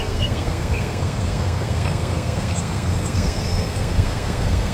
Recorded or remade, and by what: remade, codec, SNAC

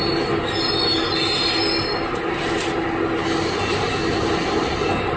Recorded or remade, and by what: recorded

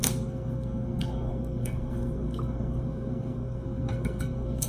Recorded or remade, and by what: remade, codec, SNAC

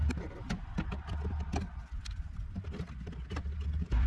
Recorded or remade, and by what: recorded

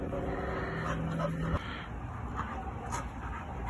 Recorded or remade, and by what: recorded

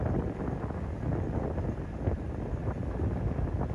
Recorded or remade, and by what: recorded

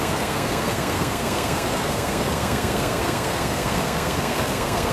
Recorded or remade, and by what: remade, codec, SNAC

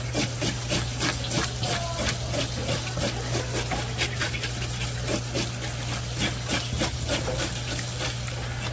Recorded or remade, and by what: recorded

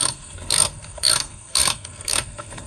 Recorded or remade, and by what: remade, codec, SNAC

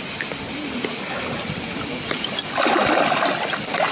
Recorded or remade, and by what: recorded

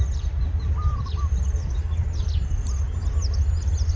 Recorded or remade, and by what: recorded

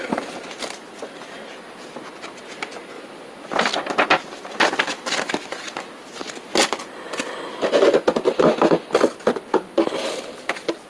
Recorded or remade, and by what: recorded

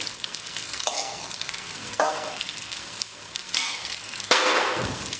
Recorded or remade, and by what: remade, codec, SNAC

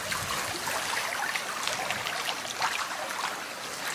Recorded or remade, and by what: recorded